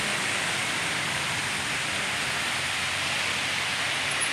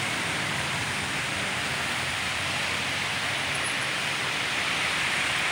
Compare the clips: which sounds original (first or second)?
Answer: first